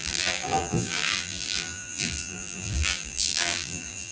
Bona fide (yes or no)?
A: no